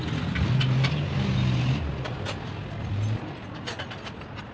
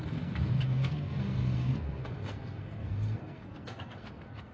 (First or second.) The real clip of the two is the first